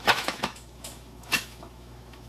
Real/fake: fake